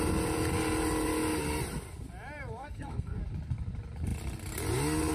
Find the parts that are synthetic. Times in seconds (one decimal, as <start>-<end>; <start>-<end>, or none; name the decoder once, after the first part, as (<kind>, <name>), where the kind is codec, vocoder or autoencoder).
2.6-3.2 (codec, SNAC)